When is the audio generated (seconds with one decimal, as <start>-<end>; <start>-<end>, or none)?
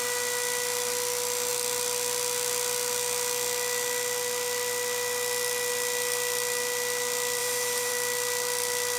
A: 7.4-7.9